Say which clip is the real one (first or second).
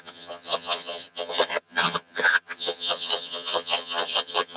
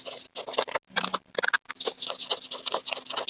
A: second